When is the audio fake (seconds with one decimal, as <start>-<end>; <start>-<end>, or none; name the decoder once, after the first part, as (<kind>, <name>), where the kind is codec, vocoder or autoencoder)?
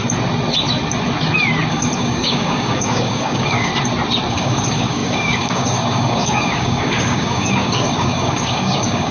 1.7-3.7 (codec, DAC); 4.3-9.1